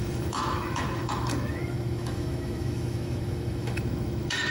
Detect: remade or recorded remade